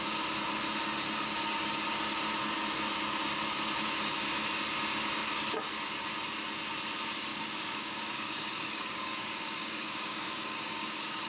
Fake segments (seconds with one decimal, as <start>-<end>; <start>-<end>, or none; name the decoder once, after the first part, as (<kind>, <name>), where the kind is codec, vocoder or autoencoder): 5.2-5.7 (codec, DAC); 7.3-11.3